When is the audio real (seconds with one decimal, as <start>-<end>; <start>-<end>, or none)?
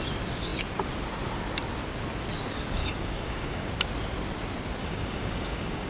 0.0-2.8; 3.7-4.8